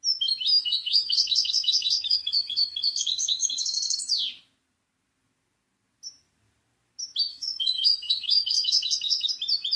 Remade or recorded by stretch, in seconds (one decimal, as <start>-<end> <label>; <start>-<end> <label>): 0.0-0.6 recorded; 0.6-4.1 remade; 4.1-7.3 recorded; 7.3-9.3 remade; 9.3-9.8 recorded